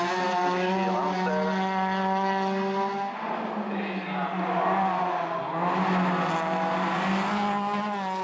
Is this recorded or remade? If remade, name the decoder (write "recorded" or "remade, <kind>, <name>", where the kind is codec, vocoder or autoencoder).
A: recorded